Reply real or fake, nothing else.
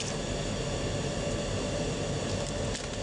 real